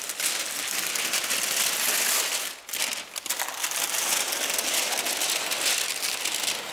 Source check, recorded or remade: recorded